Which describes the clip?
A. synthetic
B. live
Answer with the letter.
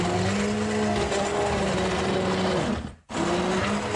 B